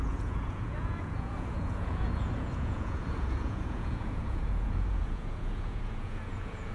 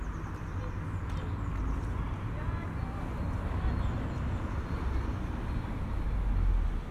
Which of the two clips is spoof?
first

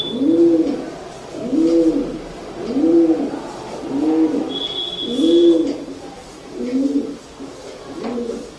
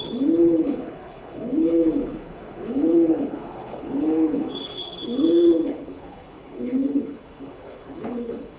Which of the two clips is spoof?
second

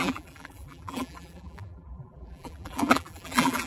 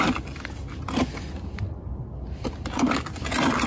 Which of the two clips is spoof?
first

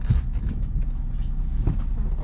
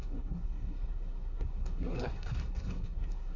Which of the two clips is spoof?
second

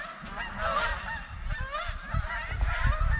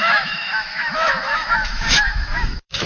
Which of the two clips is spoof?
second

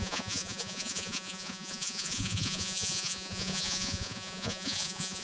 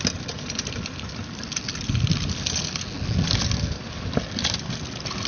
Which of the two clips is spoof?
first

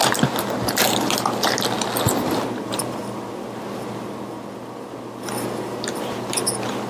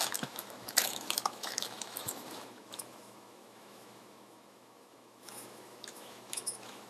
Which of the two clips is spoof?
second